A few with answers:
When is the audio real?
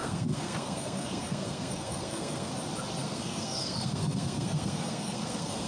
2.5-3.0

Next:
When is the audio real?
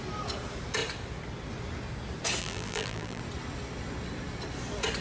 0.0-2.4; 3.2-5.0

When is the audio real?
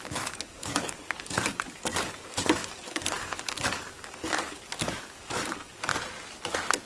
5.9-6.9